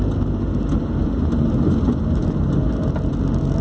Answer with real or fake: real